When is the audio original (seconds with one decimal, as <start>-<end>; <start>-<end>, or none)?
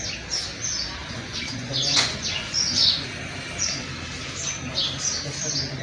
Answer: 0.0-1.0; 3.2-5.8